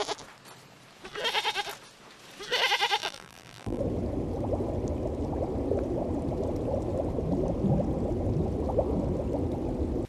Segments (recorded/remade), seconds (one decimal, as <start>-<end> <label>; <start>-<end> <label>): 0.0-3.0 recorded; 3.0-3.8 remade; 3.8-10.1 recorded